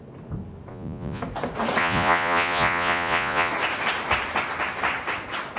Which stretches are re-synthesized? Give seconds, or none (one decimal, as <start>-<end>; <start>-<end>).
0.7-1.2; 1.8-3.5